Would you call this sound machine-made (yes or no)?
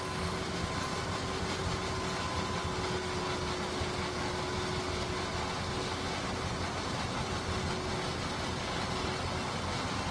no